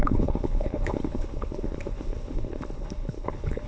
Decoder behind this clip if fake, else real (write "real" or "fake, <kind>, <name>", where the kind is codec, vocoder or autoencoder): fake, codec, HILCodec